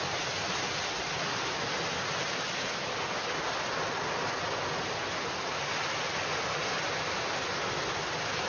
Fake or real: real